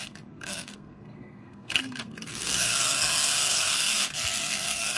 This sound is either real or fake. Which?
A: fake